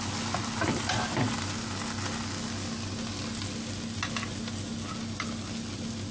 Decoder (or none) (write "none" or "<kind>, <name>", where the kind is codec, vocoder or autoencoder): none